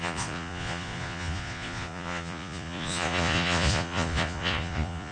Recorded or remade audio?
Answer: remade